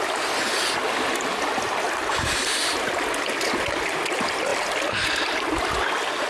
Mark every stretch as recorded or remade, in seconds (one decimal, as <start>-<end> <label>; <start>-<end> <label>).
0.0-6.3 recorded

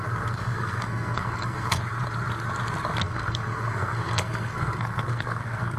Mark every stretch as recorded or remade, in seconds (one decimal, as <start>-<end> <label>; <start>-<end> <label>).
0.0-1.8 remade; 1.8-3.0 recorded; 3.0-5.8 remade

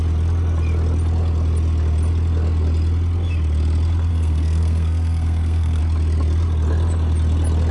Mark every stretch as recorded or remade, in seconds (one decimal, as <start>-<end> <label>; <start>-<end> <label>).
0.0-4.1 recorded; 4.1-5.8 remade; 5.8-7.7 recorded